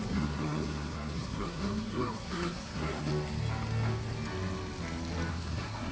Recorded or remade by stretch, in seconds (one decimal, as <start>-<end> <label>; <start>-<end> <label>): 0.0-3.1 remade; 3.1-5.3 recorded; 5.3-5.9 remade